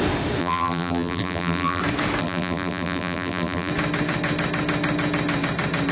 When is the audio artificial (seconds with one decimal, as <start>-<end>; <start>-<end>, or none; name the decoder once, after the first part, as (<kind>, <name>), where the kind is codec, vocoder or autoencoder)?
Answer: 0.4-1.8 (vocoder, BigVGAN v2); 2.2-3.7